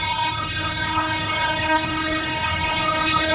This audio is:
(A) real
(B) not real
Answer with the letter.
B